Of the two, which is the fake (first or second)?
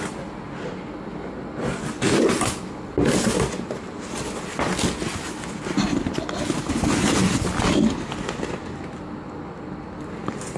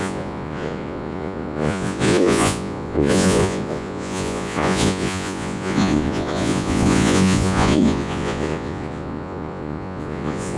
second